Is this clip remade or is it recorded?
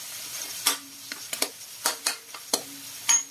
remade